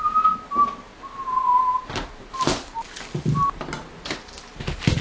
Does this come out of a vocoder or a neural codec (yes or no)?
no